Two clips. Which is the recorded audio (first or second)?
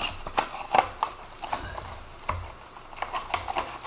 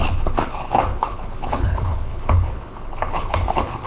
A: first